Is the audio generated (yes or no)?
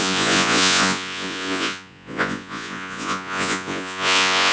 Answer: yes